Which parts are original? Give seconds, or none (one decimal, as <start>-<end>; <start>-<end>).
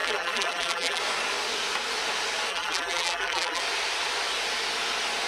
1.0-2.5; 3.6-5.3